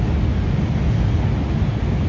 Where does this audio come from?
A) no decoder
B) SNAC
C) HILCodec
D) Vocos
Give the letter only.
A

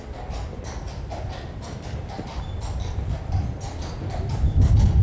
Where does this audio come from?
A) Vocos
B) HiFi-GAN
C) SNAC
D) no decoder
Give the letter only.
D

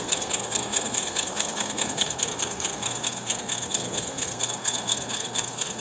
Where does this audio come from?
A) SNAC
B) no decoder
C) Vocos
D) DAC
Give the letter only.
A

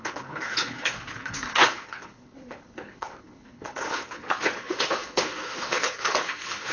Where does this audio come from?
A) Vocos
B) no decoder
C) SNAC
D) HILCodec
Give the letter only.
D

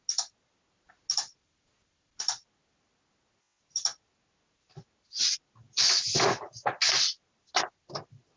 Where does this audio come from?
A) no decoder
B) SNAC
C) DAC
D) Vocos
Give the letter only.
A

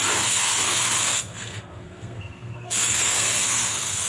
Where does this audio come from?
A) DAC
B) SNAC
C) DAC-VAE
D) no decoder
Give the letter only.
B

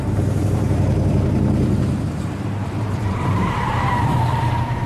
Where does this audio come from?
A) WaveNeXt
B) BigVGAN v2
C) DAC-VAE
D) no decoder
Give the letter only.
B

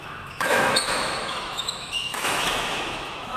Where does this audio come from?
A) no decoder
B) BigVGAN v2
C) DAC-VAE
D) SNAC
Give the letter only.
C